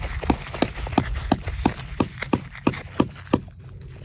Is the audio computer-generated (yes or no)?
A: no